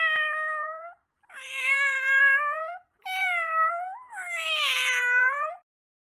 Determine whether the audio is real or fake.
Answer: fake